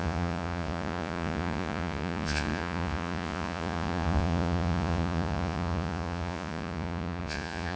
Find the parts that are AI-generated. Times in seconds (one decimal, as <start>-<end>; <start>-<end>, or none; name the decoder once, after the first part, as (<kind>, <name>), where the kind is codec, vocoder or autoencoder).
0.0-7.8 (vocoder, Vocos)